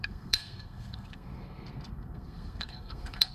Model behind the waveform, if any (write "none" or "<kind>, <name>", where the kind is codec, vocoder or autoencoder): codec, SNAC